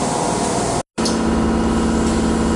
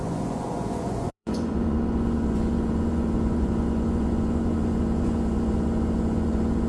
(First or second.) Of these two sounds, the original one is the first